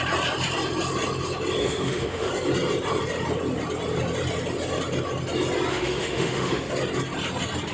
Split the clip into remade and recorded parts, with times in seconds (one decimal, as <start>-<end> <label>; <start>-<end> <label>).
0.0-1.6 recorded; 1.6-2.3 remade; 2.3-5.7 recorded; 5.7-6.7 remade; 6.7-7.7 recorded